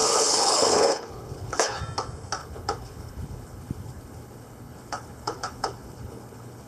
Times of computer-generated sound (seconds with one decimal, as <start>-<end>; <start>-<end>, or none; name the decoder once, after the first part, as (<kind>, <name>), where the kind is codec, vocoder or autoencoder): 0.0-1.8 (codec, HILCodec); 2.4-6.7